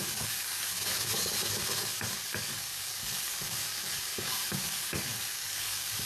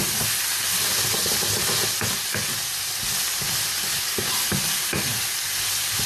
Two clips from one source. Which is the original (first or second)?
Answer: second